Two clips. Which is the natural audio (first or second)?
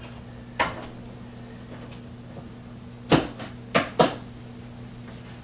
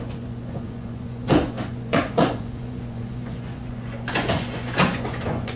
first